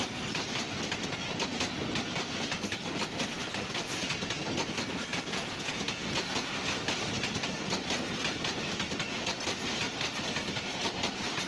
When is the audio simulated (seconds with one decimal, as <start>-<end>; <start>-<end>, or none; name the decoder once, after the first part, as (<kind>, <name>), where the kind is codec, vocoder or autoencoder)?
5.1-6.5 (vocoder, Vocos)